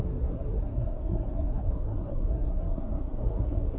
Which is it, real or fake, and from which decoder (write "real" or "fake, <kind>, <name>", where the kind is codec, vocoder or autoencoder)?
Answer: fake, codec, SNAC